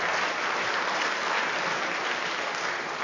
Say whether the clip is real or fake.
real